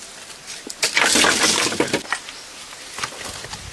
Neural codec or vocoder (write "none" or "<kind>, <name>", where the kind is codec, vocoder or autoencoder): none